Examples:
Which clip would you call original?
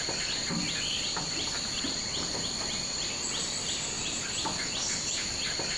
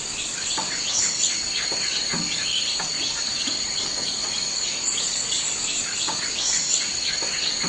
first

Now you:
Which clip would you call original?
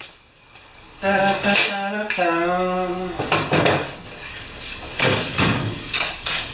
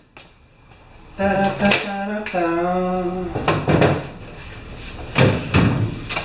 second